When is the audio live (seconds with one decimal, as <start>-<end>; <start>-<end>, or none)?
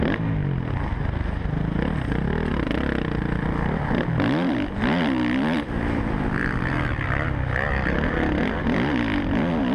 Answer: 0.0-9.7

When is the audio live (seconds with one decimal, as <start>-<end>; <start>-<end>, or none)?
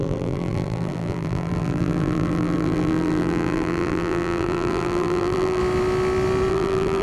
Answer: 5.6-6.5